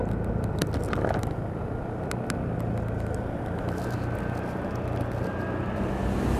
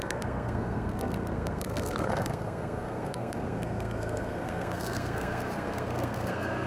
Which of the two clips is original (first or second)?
first